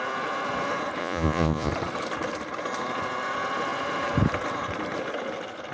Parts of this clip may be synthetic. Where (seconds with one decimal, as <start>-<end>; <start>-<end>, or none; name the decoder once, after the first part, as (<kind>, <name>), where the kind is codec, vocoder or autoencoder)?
1.0-1.7 (vocoder, Vocos)